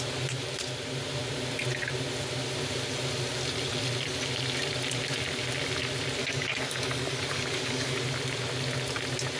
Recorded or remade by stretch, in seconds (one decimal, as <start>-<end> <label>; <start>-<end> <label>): 0.0-6.2 recorded; 6.2-8.0 remade; 8.0-9.4 recorded